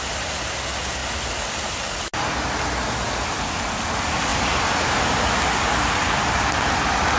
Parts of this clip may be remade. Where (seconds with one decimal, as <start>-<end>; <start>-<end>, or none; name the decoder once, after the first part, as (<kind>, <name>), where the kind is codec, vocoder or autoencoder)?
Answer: none